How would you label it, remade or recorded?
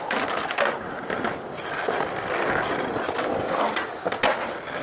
recorded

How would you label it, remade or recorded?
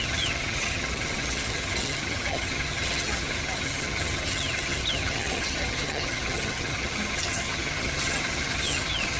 remade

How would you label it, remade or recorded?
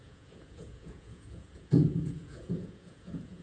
remade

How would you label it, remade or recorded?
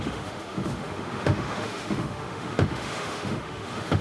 remade